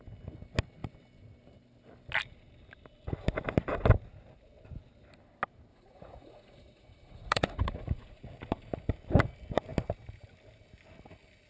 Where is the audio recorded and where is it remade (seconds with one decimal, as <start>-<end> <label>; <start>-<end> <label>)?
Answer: 0.0-5.7 recorded; 5.7-8.2 remade; 8.2-11.5 recorded